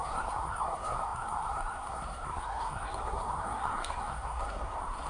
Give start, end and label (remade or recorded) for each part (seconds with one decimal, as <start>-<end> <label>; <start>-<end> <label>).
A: 0.0-5.1 remade